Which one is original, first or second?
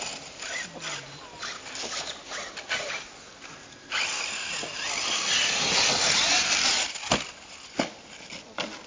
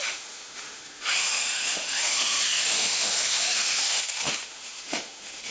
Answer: first